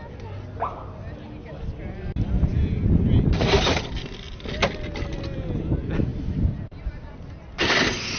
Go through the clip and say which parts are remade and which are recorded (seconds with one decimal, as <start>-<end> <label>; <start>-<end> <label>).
0.0-8.2 recorded